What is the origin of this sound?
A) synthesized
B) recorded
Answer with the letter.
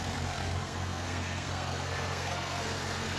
A